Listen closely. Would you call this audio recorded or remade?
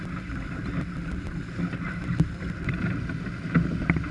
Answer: recorded